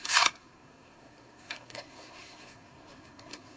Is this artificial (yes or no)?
yes